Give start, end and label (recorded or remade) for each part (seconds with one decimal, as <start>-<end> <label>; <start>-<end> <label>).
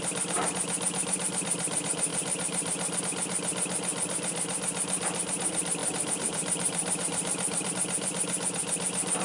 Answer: 0.0-2.1 recorded; 2.1-3.0 remade; 3.0-5.8 recorded; 5.8-7.7 remade; 7.7-9.2 recorded